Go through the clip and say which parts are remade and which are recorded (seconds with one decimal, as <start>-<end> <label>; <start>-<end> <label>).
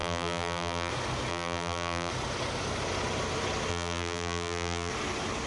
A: 0.0-0.9 remade; 0.9-1.3 recorded; 1.3-2.1 remade; 2.1-3.7 recorded; 3.7-4.9 remade; 4.9-5.5 recorded